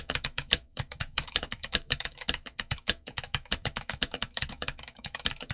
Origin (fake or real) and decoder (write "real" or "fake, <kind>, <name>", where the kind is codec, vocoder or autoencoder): fake, autoencoder, DAC-VAE